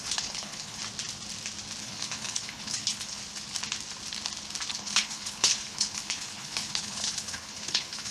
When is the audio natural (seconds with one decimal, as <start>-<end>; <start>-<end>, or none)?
0.8-1.8; 3.2-4.7